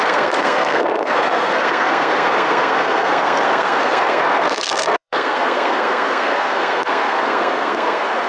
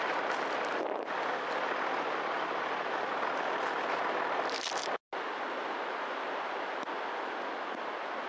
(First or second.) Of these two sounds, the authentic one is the second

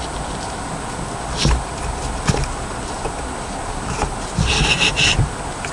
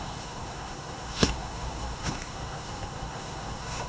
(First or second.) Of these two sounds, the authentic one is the first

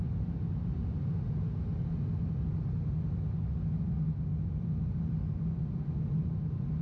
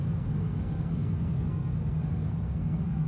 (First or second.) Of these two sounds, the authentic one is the first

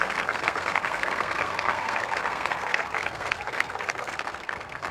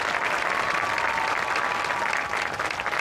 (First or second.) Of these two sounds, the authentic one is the second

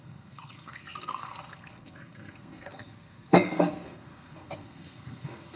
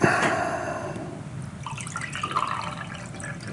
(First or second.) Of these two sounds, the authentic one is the second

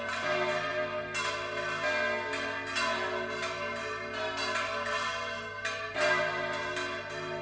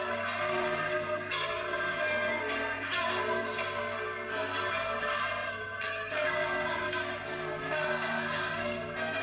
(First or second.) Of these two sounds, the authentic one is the first